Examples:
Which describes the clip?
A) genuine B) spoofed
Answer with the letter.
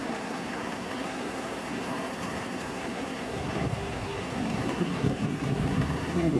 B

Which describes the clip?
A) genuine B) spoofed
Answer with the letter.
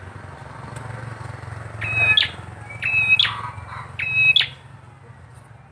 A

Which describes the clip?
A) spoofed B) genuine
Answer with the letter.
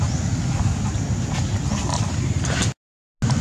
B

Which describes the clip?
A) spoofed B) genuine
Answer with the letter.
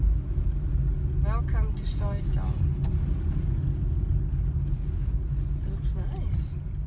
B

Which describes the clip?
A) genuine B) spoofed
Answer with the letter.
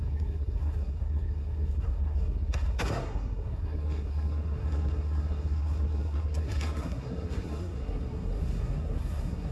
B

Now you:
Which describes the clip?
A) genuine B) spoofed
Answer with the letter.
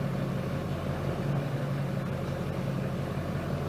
A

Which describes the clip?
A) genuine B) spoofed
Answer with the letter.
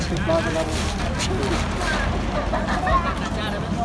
A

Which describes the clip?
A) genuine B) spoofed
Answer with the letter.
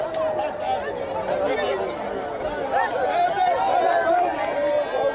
A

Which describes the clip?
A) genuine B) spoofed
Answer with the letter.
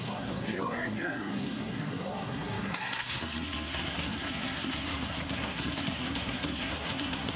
B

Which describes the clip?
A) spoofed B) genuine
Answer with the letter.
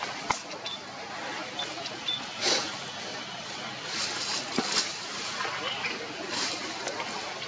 B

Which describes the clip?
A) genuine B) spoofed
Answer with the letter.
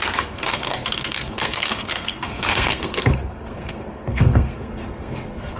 B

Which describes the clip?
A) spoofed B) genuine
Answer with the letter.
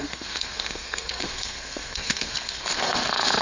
A